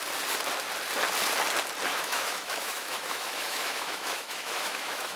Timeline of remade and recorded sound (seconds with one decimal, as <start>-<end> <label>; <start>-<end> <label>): 0.0-1.9 recorded; 1.9-5.2 remade